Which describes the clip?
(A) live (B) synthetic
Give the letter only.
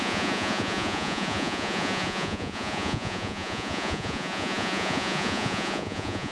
B